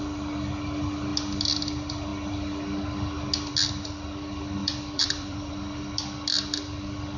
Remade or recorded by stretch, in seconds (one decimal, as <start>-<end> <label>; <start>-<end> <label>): 0.0-4.6 recorded; 4.6-5.5 remade; 5.5-7.2 recorded